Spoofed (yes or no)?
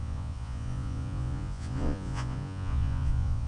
yes